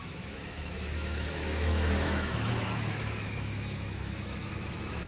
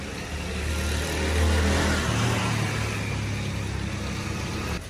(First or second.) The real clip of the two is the second